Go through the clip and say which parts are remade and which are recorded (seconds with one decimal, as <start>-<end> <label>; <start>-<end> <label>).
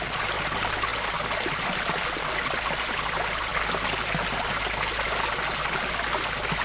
0.0-6.6 recorded